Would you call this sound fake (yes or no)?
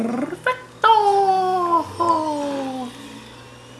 no